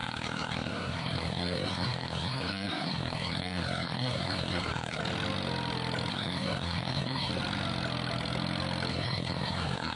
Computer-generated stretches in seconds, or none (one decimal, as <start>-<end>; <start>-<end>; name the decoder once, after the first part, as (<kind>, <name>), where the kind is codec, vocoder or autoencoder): 0.0-5.0 (codec, SNAC); 6.1-7.3; 8.9-10.0